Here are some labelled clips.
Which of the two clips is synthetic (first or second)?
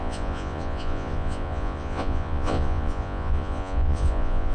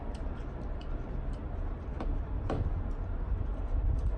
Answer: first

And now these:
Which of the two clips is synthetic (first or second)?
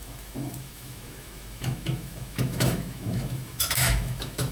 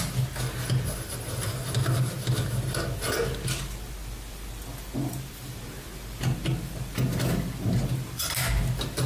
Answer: first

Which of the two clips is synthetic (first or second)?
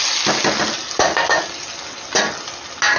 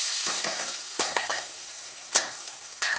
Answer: second